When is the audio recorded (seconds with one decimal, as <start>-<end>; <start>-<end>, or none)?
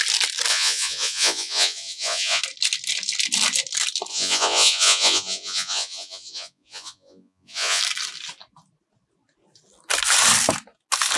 0.0-0.5; 2.4-4.1; 7.8-11.2